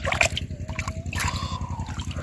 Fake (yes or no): no